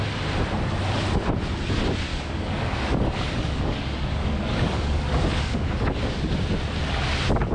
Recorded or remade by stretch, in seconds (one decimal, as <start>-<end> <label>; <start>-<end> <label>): 0.0-2.1 recorded; 2.1-6.2 remade; 6.2-7.5 recorded